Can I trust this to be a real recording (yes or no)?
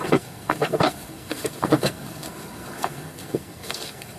no